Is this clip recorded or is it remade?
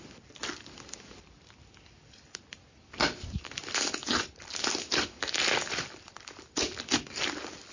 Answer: recorded